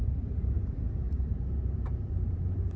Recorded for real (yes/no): no